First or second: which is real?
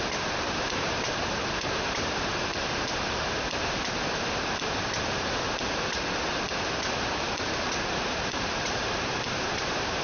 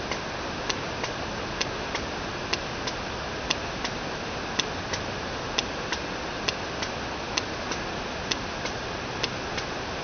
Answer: second